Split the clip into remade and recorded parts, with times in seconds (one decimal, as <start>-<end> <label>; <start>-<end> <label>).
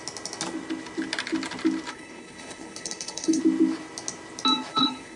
0.0-1.9 recorded; 1.9-3.4 remade; 3.4-4.7 recorded; 4.7-5.2 remade